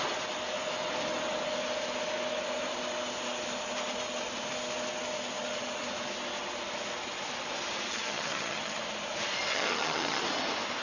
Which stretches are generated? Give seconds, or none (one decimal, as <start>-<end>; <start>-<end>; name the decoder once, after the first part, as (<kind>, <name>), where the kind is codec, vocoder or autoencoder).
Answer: 7.9-8.8 (vocoder, HiFi-GAN); 9.5-10.2